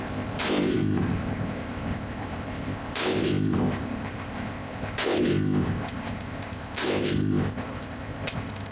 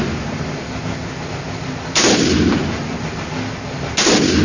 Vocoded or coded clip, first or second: first